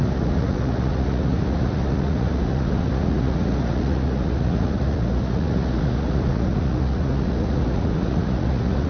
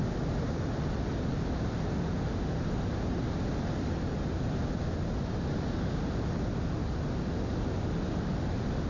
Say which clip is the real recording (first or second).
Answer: second